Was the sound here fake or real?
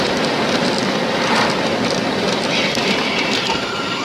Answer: fake